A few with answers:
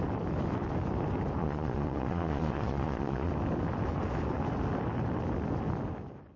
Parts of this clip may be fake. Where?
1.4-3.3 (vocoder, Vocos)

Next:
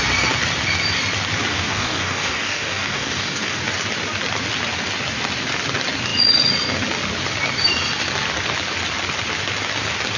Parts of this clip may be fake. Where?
1.5-3.6 (codec, DAC)